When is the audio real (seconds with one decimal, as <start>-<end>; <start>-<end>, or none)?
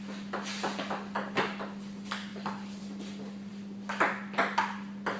0.0-5.2